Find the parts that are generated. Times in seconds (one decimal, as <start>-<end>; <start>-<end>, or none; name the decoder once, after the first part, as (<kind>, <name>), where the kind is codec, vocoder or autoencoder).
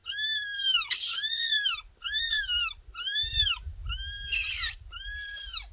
0.0-3.4 (vocoder, BigVGAN v2)